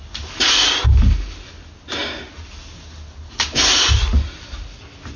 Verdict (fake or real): real